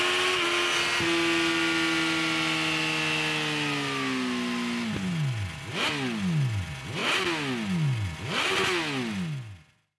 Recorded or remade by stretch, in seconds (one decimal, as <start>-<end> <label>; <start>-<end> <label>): 0.0-10.0 recorded